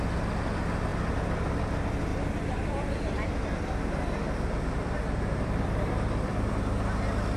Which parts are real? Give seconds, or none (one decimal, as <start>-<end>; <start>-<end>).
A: 0.0-2.1; 6.5-7.4